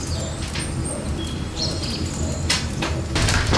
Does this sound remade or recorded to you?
recorded